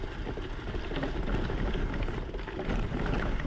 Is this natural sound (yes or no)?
yes